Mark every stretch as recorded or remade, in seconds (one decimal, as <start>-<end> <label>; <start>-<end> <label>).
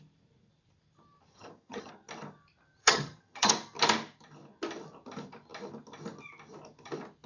0.0-1.3 recorded; 1.3-1.9 remade; 1.9-2.8 recorded; 2.8-3.5 remade; 3.5-7.3 recorded